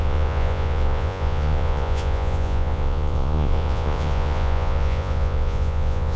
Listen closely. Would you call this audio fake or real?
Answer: fake